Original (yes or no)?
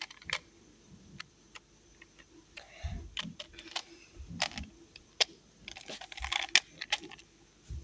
yes